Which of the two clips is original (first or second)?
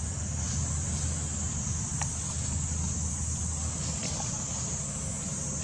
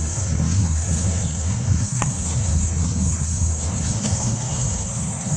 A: first